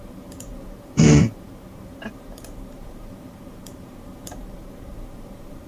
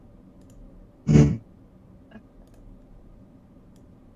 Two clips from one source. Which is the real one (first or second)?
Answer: second